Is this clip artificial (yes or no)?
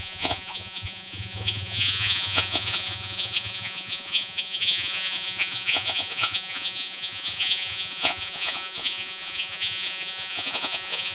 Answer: yes